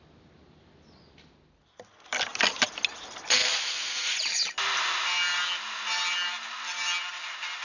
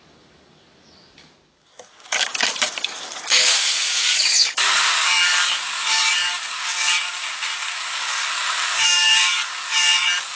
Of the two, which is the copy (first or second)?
second